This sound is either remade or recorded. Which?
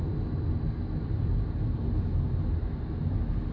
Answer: recorded